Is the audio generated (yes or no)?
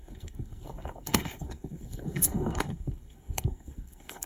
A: yes